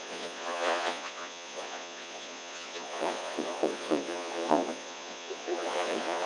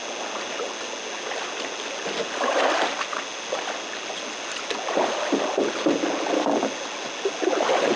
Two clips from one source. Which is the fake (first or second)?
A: first